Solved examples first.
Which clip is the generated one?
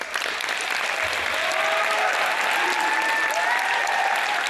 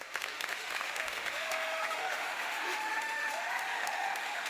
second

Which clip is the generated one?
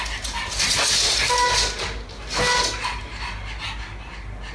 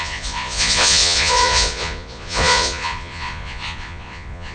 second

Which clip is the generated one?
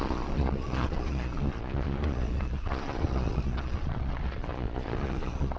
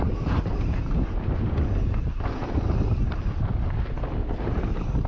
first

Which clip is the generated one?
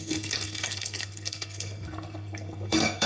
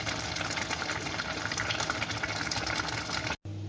first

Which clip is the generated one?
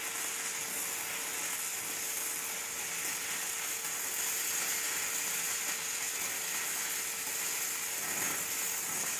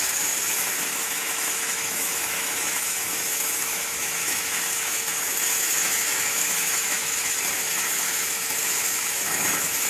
second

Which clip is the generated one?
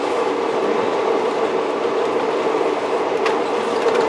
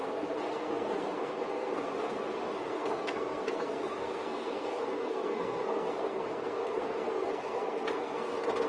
second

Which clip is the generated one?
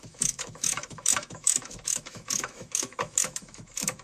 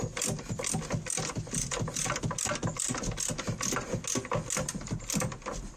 first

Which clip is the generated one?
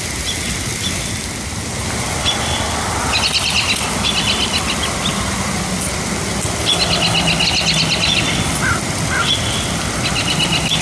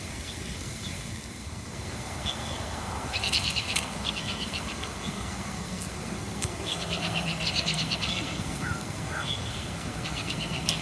second